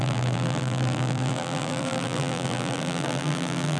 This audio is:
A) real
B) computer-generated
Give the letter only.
B